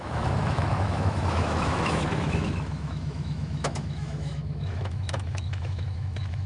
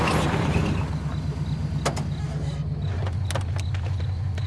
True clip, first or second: second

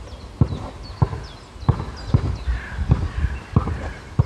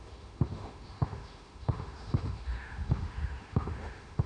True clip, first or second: first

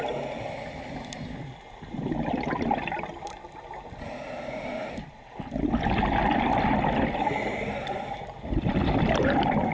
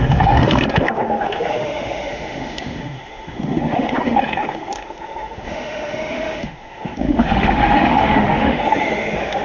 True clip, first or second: first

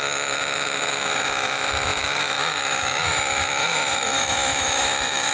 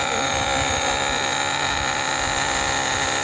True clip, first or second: second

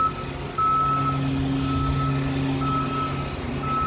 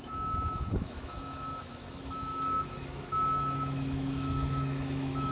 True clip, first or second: first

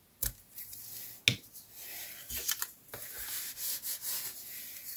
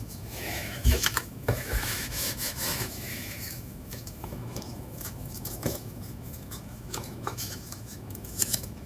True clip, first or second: first